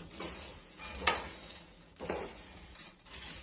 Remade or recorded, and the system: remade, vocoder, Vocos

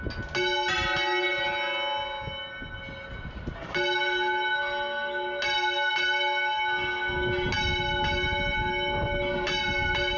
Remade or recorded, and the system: recorded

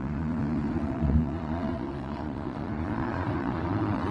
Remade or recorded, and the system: remade, vocoder, Vocos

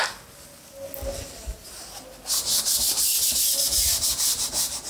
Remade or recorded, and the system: recorded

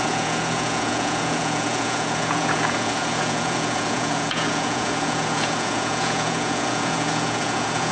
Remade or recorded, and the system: remade, vocoder, Vocos